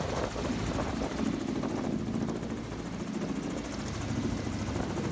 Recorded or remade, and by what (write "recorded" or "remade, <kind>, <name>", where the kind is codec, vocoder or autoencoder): recorded